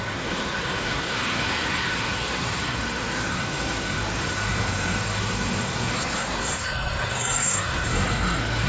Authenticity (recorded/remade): remade